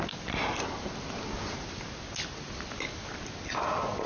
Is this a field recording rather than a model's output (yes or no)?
yes